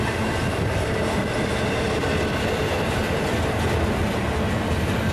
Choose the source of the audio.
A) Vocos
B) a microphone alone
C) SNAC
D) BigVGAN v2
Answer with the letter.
B